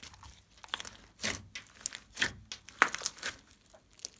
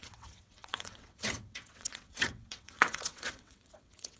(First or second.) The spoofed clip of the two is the second